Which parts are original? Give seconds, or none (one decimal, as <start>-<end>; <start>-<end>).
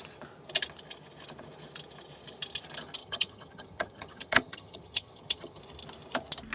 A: 0.0-3.0; 5.6-6.5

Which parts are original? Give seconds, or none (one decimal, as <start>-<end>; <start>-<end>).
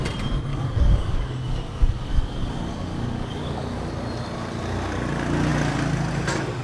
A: 0.0-0.5; 3.9-6.6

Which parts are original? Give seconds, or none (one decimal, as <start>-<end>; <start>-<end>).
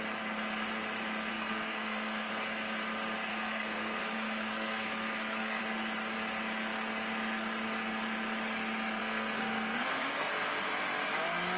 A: 0.0-1.3; 2.3-3.3; 5.6-9.0; 10.3-11.6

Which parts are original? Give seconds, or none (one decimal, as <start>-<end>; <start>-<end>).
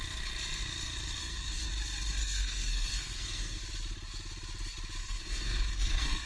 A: 0.0-1.2; 1.7-2.2; 3.6-5.0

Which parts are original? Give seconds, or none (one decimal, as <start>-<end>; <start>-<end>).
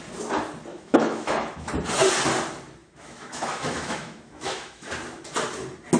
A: 0.0-0.7; 1.7-2.8; 4.9-6.0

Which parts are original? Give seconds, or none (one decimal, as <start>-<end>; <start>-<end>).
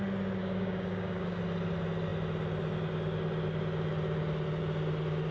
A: 0.0-0.4; 1.4-5.3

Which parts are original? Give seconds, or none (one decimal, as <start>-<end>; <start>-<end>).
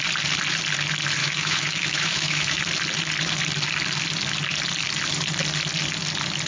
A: 0.0-1.2; 2.6-6.5